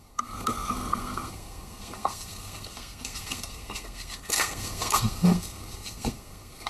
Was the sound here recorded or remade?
remade